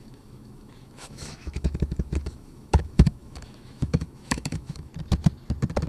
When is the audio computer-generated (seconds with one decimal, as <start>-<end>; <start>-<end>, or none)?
0.0-4.9